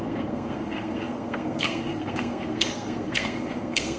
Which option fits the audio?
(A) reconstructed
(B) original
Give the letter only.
A